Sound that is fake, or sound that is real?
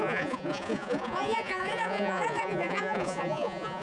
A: fake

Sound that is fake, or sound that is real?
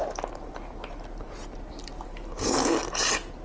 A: real